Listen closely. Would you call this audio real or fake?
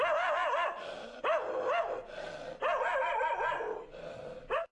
real